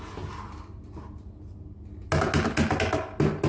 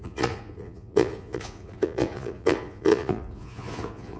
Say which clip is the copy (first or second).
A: second